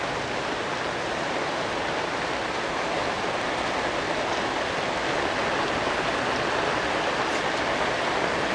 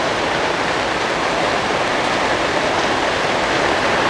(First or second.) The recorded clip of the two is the first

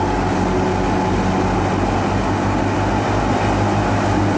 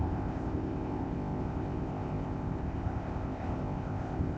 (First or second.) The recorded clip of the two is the first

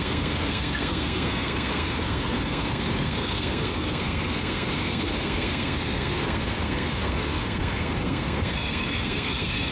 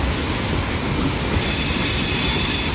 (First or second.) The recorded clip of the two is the second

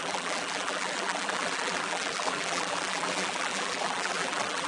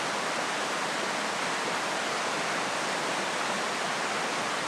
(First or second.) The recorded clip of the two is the second